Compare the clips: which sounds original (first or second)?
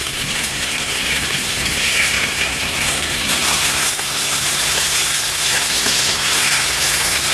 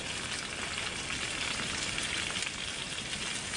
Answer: second